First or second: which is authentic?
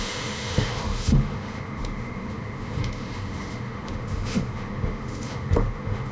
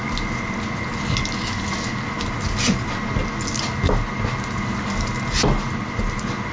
second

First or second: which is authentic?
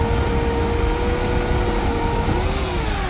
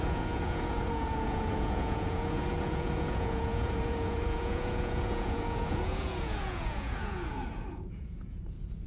first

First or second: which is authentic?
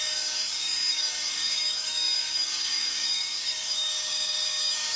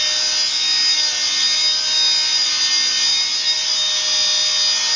second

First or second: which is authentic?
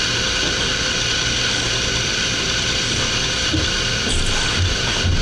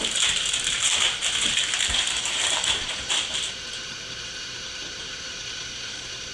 first